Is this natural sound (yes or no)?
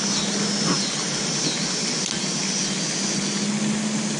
yes